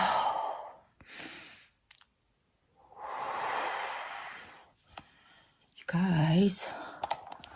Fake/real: real